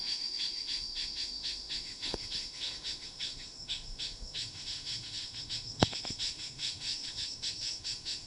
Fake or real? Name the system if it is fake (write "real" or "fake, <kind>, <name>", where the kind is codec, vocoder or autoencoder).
fake, autoencoder, DAC-VAE